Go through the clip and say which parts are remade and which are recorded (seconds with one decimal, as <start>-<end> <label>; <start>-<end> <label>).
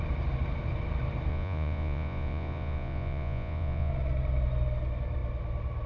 0.0-1.3 recorded; 1.3-3.9 remade; 3.9-5.9 recorded